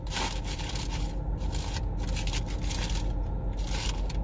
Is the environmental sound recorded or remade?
recorded